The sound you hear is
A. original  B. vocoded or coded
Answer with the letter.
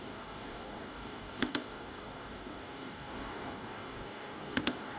B